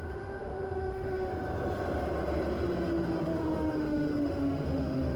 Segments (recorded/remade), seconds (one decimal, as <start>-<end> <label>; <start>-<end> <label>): 0.0-1.3 remade; 1.3-3.2 recorded; 3.2-5.2 remade